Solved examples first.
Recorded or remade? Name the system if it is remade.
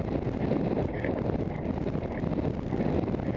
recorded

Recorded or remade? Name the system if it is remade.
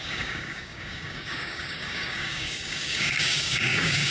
remade, codec, DAC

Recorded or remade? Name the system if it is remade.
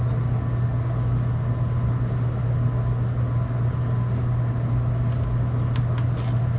recorded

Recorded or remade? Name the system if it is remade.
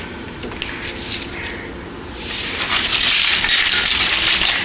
recorded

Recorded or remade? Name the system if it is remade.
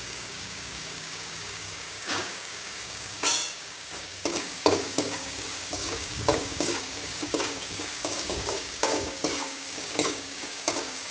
remade, codec, DAC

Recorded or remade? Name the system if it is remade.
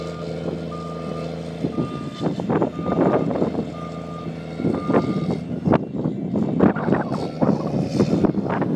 recorded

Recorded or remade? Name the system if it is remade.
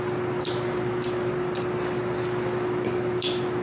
recorded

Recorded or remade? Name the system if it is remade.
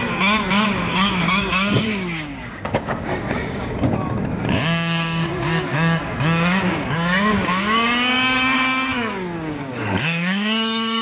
remade, codec, DAC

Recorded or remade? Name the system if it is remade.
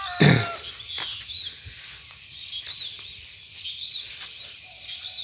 recorded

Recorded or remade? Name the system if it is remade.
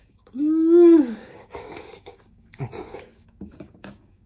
remade, codec, DAC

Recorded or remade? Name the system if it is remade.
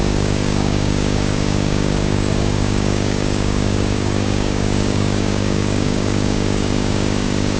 remade, codec, DAC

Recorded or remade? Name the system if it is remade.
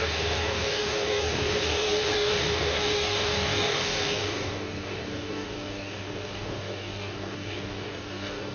remade, codec, DAC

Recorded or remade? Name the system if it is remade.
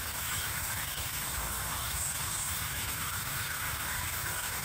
remade, codec, DAC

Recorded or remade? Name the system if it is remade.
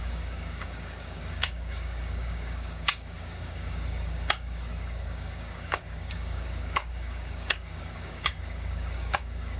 remade, codec, DAC